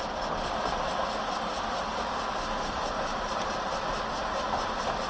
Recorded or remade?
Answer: recorded